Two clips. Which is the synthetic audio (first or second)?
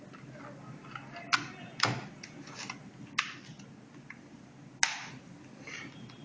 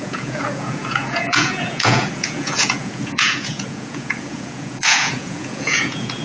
second